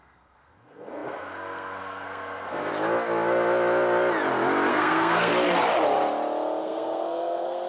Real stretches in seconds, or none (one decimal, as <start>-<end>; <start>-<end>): 2.7-4.7; 5.3-6.6